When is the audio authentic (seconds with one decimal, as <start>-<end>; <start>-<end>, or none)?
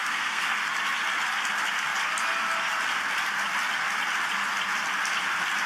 0.6-5.7